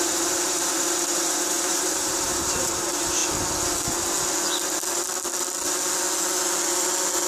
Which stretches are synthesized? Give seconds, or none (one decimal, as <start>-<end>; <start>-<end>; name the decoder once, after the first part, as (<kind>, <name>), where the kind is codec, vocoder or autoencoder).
0.0-3.2 (vocoder, BigVGAN v2)